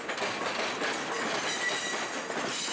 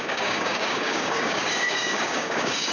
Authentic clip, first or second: first